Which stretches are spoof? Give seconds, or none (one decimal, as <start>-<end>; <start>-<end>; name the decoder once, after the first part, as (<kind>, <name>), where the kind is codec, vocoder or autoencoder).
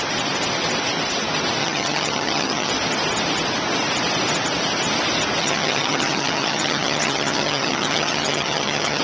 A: 1.6-2.7 (vocoder, HiFi-GAN); 5.4-9.0